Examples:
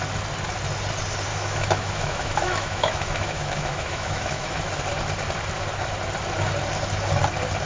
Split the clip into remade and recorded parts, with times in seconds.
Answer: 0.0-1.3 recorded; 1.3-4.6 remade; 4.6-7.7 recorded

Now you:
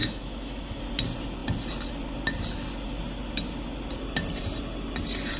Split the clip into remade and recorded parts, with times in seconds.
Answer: 0.0-0.8 remade; 0.8-5.4 recorded

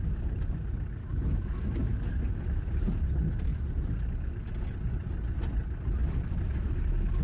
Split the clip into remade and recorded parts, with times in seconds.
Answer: 0.0-1.0 recorded; 1.0-2.7 remade; 2.7-7.2 recorded

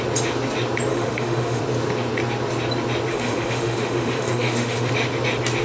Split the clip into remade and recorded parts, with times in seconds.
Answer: 0.0-0.9 recorded; 0.9-1.6 remade; 1.6-3.1 recorded; 3.1-4.9 remade; 4.9-5.6 recorded

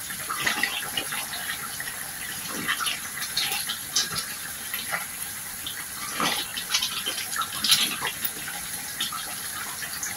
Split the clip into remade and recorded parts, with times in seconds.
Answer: 0.0-10.2 recorded

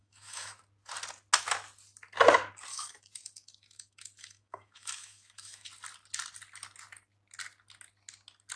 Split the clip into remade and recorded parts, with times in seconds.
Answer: 0.0-0.6 remade; 0.6-2.7 recorded; 2.7-5.7 remade; 5.7-8.6 recorded

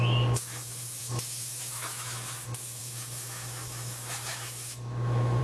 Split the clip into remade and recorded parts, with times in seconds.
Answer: 0.0-5.4 remade